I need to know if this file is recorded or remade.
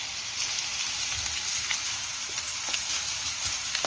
recorded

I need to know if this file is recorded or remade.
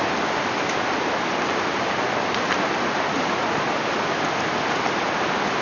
recorded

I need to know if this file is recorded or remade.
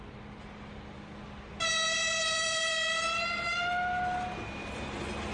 recorded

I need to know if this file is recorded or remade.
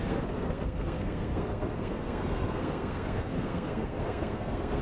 remade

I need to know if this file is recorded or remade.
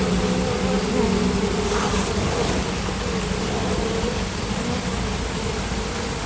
recorded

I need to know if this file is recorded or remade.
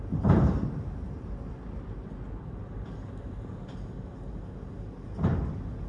recorded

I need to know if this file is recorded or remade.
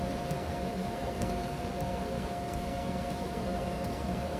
remade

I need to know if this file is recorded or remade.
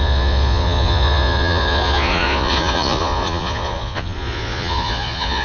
remade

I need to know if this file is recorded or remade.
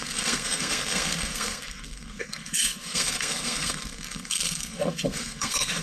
remade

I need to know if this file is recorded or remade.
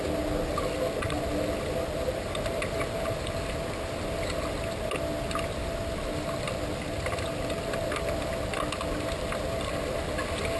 recorded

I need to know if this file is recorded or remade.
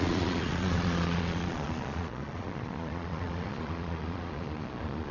remade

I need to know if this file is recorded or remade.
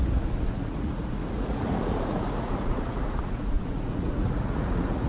remade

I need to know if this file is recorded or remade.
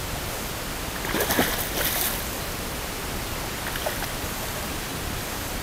recorded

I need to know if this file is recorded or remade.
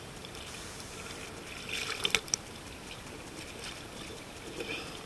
recorded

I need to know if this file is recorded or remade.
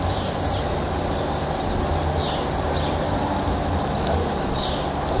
recorded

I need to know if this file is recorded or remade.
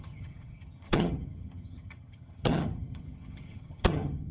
remade